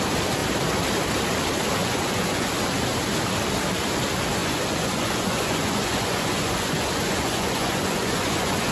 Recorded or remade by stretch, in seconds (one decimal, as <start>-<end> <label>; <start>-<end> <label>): 0.0-1.8 recorded; 1.8-2.5 remade; 2.5-4.4 recorded; 4.4-8.7 remade